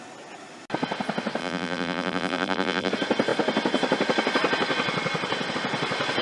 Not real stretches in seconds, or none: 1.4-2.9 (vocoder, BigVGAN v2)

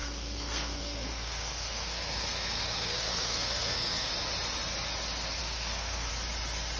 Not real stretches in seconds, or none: 0.0-4.1 (codec, SNAC); 5.4-6.1

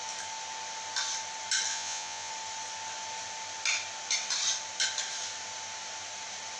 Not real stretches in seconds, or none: 1.7-2.3 (vocoder, Vocos)

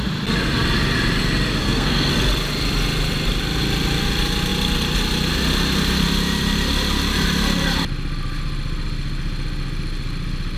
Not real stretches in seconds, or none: 1.6-2.1 (codec, SNAC)